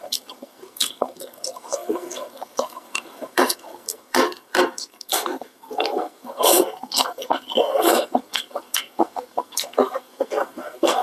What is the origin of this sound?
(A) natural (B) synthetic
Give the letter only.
B